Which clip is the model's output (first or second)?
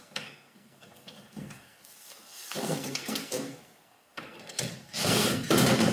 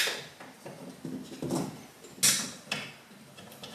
first